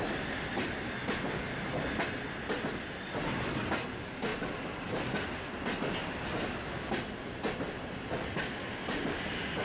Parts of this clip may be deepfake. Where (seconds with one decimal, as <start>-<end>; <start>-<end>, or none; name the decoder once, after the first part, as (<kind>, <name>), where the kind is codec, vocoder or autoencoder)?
4.3-5.0 (vocoder, BigVGAN v2)